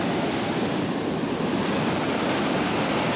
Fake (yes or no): no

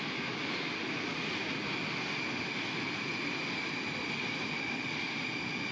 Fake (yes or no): no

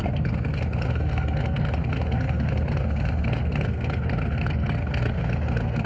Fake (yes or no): yes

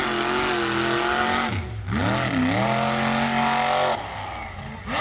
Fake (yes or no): no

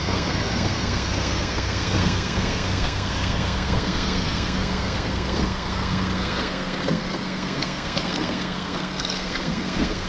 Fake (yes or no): yes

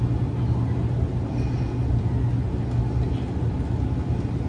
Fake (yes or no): no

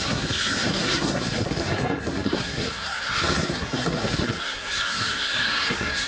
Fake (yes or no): yes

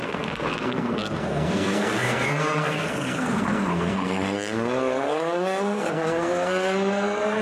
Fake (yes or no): yes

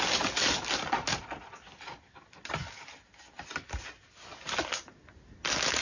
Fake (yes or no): no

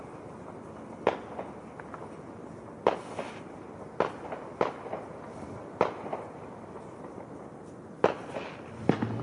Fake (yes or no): no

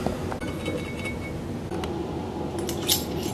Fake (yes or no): no